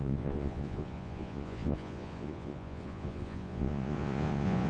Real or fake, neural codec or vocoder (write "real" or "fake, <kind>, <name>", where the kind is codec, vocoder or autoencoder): fake, vocoder, Vocos